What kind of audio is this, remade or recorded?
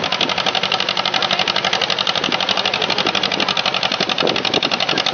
recorded